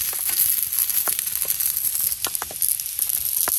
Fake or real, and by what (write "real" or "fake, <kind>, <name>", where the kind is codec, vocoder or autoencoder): real